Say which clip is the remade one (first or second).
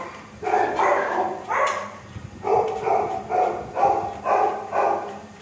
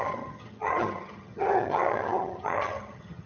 second